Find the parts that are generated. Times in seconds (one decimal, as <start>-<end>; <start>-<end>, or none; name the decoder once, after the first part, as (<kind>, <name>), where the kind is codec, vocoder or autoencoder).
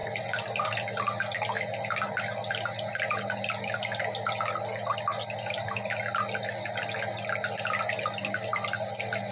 none